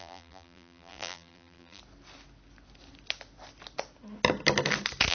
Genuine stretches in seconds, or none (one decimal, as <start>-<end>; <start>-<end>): 1.8-5.1